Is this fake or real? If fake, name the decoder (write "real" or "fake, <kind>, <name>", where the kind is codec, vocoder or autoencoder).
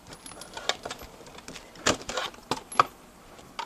real